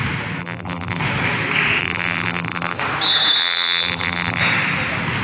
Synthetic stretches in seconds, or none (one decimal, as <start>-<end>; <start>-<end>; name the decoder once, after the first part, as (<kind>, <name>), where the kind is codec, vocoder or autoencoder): 0.4-1.0 (vocoder, BigVGAN v2); 1.8-2.8; 3.4-4.4